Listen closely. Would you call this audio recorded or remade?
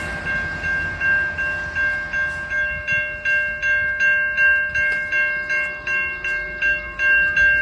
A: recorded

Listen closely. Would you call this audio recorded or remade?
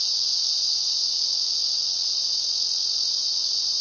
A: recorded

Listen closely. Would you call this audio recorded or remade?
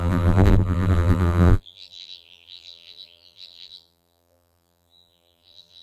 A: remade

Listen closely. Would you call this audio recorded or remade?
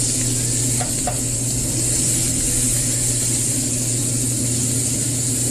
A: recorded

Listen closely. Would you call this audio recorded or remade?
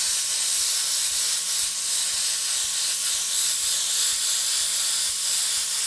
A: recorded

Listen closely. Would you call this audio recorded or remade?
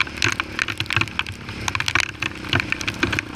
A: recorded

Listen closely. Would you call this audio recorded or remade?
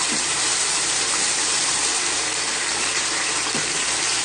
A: remade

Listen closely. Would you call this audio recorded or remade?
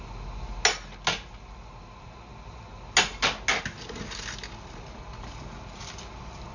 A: recorded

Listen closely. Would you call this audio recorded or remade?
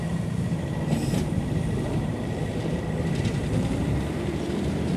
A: remade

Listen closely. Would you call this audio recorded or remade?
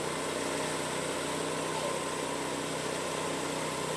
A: recorded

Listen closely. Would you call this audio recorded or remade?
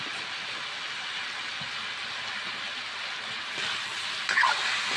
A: recorded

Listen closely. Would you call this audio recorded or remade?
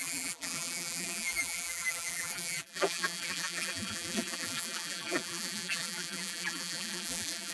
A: remade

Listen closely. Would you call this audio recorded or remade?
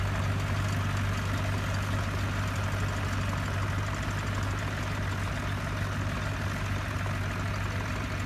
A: recorded